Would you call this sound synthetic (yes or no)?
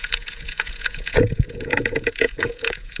yes